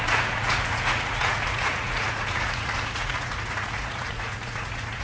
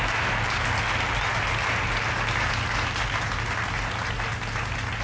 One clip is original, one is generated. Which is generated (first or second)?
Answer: first